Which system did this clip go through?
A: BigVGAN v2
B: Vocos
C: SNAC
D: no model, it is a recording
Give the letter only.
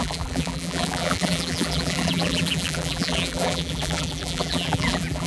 A